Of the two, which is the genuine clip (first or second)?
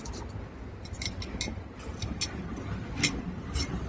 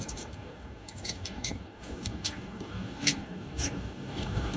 first